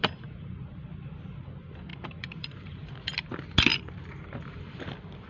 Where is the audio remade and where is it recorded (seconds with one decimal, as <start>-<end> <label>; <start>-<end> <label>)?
0.0-1.2 remade; 1.2-1.9 recorded; 1.9-2.9 remade; 2.9-5.3 recorded